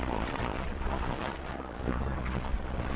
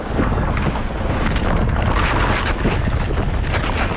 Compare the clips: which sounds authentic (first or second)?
second